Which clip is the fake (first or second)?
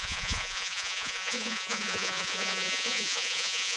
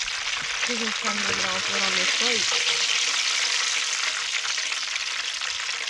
first